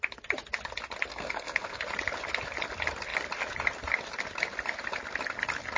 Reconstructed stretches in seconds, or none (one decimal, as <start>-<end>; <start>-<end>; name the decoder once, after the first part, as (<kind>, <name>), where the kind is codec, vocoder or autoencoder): 1.1-1.8 (codec, SNAC)